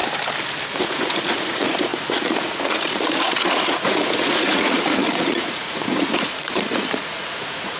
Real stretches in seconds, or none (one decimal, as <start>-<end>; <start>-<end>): 0.0-0.7